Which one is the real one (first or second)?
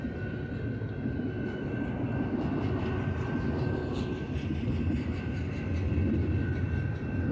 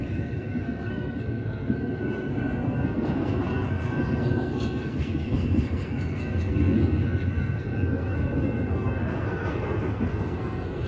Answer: first